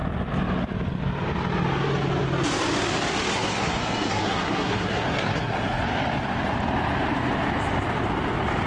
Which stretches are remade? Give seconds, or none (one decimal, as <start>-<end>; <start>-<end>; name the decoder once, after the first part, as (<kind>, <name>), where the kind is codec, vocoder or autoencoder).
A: 3.3-5.8 (codec, SNAC)